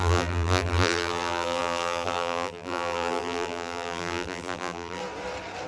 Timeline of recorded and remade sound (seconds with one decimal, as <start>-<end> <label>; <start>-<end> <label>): 0.0-5.0 remade; 5.0-5.7 recorded